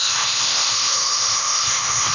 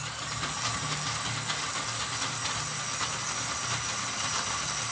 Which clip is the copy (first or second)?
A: first